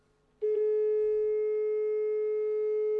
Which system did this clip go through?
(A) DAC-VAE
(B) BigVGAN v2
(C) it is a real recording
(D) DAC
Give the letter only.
C